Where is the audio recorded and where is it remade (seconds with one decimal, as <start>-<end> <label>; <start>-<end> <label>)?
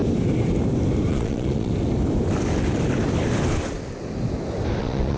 0.0-1.1 recorded; 1.1-1.7 remade; 1.7-4.8 recorded; 4.8-5.2 remade